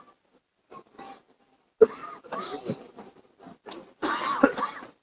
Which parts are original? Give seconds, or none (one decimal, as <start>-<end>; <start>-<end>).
0.0-5.0